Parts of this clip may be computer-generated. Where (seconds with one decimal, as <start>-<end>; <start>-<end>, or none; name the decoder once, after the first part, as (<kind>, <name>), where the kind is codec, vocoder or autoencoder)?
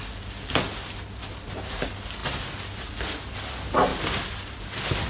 none